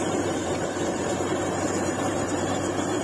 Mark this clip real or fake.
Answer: fake